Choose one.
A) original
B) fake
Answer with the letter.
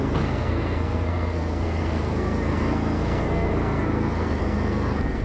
B